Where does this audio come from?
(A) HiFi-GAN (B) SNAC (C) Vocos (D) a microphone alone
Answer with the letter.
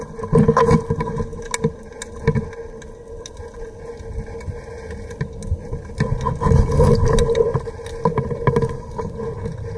D